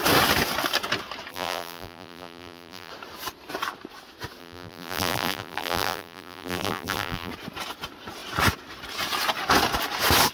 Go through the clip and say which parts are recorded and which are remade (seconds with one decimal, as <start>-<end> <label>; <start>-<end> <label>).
0.0-1.3 recorded; 1.3-2.9 remade; 2.9-4.4 recorded; 4.4-7.3 remade; 7.3-10.3 recorded